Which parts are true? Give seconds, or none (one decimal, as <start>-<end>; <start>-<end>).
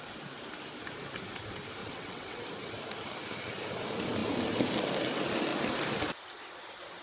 0.0-1.8; 2.4-7.0